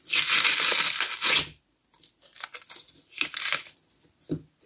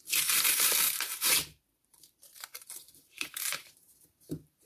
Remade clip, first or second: second